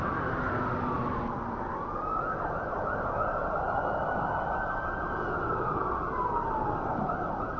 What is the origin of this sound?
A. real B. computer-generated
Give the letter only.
A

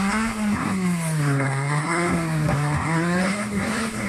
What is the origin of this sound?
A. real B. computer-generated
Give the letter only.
B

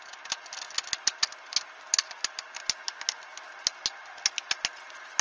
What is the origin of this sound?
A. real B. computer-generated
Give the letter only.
A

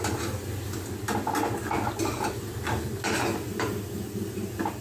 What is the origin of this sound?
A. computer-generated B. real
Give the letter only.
B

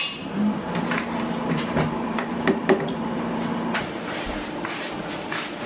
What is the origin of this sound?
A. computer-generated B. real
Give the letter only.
A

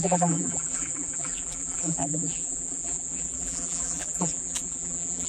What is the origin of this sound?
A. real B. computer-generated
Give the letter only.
B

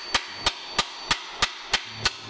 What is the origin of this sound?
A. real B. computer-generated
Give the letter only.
A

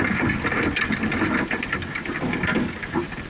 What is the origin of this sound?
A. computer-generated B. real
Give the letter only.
B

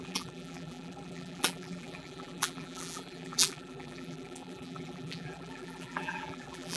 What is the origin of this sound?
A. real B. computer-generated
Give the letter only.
B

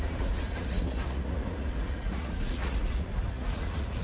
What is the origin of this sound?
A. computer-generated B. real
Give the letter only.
A